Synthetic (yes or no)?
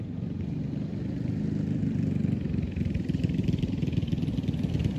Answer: yes